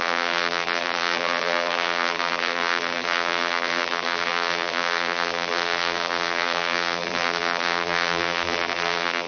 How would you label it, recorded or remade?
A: remade